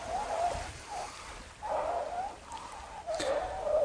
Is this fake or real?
real